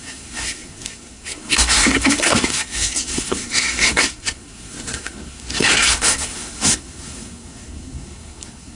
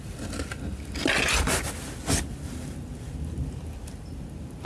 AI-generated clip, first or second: first